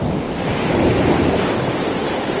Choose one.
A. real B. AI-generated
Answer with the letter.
A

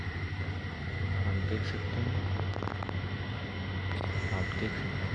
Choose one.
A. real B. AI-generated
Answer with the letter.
A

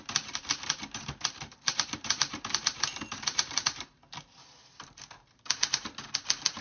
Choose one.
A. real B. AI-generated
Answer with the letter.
B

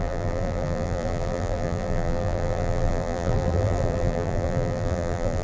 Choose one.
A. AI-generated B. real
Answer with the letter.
A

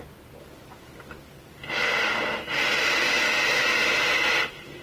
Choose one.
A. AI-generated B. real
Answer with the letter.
B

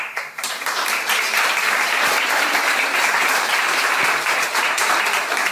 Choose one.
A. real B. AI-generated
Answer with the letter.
B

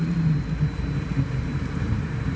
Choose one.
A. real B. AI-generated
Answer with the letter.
B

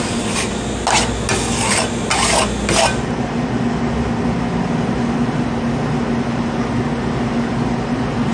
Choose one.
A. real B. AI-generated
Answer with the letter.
A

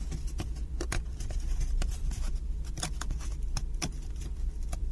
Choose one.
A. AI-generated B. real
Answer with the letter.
A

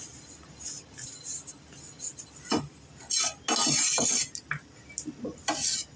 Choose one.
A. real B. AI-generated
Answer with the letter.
A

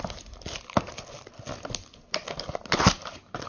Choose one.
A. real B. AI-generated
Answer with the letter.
A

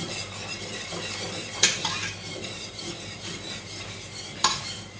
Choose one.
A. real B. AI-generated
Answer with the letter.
B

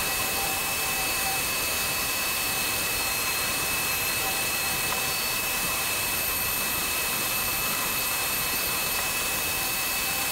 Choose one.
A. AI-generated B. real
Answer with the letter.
A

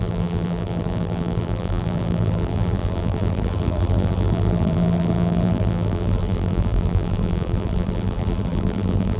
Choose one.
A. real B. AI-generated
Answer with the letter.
B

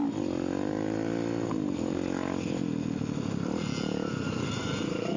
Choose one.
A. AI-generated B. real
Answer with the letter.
B